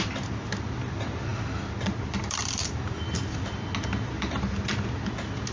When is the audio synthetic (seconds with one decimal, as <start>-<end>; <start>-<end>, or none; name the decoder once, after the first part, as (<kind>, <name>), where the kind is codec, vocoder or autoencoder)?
none

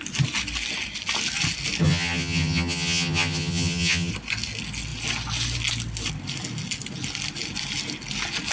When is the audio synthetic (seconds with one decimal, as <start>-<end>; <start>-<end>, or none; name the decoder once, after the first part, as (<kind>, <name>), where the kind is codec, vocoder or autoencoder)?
1.8-4.1 (vocoder, HiFi-GAN)

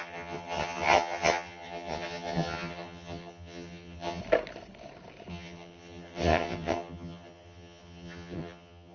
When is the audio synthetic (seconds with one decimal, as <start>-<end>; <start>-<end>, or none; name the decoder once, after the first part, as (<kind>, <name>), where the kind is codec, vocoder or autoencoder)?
0.0-4.2 (vocoder, HiFi-GAN); 5.3-8.9